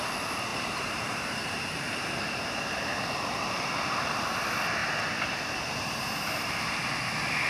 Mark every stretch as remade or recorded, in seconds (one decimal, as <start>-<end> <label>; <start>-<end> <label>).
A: 0.0-0.5 recorded; 0.5-3.1 remade; 3.1-4.8 recorded; 4.8-6.6 remade; 6.6-7.5 recorded